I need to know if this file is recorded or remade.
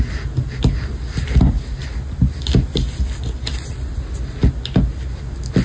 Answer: recorded